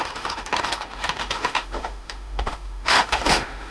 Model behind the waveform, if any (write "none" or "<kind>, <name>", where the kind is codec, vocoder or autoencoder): autoencoder, DAC-VAE